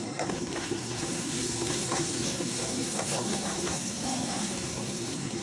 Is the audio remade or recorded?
remade